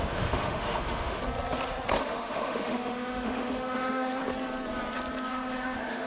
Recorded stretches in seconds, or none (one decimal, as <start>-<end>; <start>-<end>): 1.2-2.0; 4.2-5.3